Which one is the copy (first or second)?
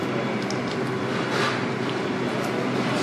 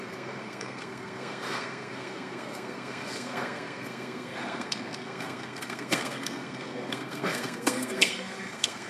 second